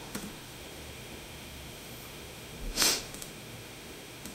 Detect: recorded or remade remade